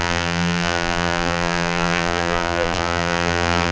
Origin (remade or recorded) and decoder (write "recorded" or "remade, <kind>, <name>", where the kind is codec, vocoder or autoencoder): remade, vocoder, BigVGAN v2